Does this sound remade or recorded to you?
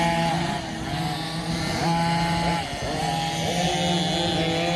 recorded